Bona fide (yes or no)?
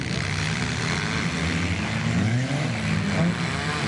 yes